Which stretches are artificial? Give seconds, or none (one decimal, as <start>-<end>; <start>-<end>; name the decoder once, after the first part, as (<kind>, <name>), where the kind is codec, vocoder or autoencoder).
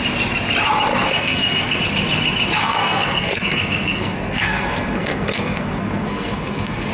0.9-1.8 (codec, SNAC); 2.6-6.9